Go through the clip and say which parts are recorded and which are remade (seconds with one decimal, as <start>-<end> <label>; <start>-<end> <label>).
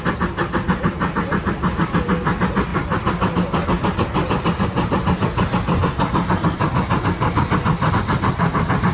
0.0-8.9 recorded